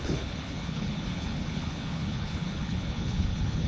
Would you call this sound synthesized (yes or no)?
yes